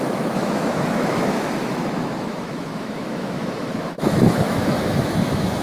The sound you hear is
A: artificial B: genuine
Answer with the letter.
A